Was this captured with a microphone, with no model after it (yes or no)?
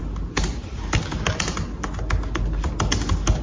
yes